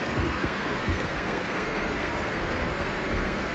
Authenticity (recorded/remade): remade